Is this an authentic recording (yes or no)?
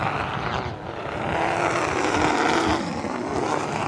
yes